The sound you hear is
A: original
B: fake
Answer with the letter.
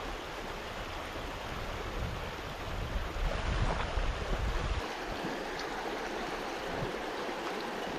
A